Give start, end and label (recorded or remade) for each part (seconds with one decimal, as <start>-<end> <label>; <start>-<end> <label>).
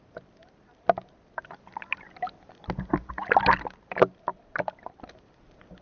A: 0.0-4.3 recorded; 4.3-5.0 remade; 5.0-5.8 recorded